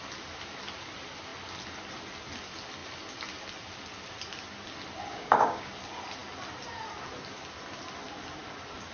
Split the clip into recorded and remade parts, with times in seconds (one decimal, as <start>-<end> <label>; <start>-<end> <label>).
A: 0.0-5.1 recorded; 5.1-5.7 remade; 5.7-8.9 recorded